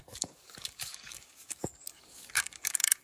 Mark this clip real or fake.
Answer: fake